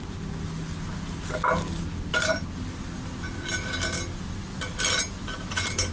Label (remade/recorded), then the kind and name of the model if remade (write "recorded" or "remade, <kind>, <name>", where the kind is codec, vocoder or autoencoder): recorded